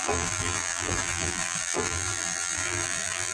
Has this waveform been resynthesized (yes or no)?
yes